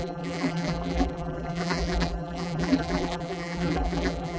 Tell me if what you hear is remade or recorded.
remade